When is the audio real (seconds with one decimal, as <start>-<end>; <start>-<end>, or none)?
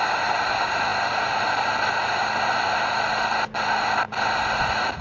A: 0.0-5.0